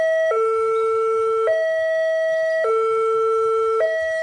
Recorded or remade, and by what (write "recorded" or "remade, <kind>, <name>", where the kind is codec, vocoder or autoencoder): recorded